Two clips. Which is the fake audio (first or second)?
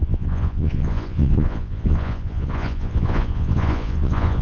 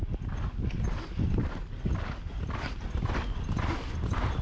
first